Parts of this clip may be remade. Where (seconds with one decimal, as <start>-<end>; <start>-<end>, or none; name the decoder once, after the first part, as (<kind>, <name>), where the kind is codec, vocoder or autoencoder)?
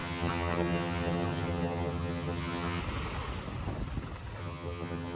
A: 0.0-2.8 (vocoder, HiFi-GAN); 4.4-5.2